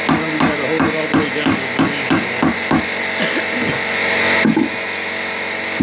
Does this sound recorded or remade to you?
recorded